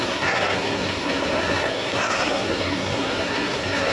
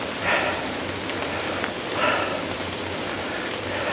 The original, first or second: second